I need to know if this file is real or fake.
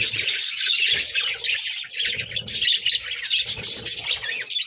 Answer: real